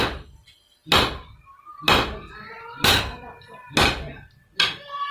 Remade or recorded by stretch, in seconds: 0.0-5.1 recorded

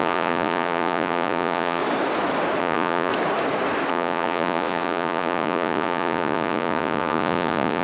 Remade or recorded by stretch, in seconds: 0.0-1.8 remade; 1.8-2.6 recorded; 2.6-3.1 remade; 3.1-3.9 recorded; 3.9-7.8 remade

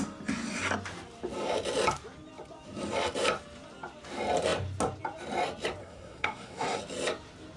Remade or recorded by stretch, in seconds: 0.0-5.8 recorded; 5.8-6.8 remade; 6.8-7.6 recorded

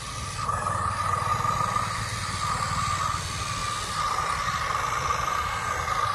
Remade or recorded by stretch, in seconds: 0.0-6.1 recorded

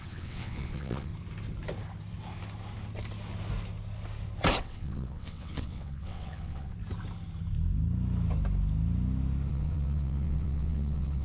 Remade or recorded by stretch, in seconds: 0.0-1.1 remade; 1.1-4.6 recorded; 4.6-6.7 remade; 6.7-9.5 recorded; 9.5-11.2 remade

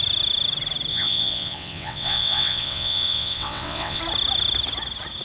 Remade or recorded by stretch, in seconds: 0.0-0.9 recorded; 0.9-4.0 remade; 4.0-5.2 recorded

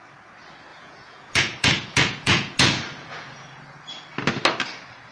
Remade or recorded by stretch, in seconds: 0.0-0.7 recorded; 0.7-3.8 remade; 3.8-5.1 recorded